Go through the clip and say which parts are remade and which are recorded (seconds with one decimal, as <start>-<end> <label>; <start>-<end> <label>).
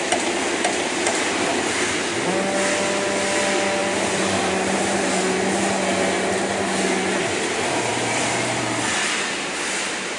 0.0-3.8 recorded; 3.8-4.4 remade; 4.4-7.9 recorded; 7.9-8.6 remade; 8.6-10.2 recorded